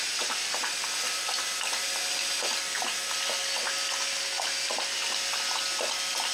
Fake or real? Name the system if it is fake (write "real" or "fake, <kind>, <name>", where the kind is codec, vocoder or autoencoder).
real